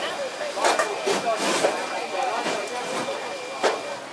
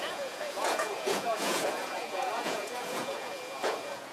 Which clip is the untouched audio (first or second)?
first